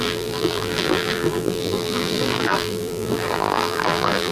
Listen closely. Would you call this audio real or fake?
fake